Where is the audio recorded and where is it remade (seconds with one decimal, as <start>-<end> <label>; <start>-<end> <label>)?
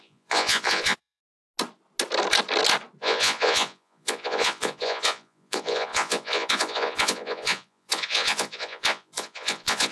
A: 0.0-1.2 remade; 1.2-3.0 recorded; 3.0-9.9 remade